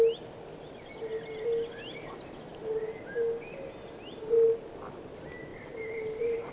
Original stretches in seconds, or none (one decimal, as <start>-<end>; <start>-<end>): 0.0-5.5